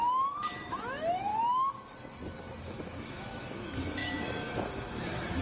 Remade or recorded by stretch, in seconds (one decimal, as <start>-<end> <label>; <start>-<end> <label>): 0.0-1.3 remade; 1.3-2.6 recorded; 2.6-5.4 remade